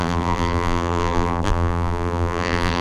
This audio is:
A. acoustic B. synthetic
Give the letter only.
B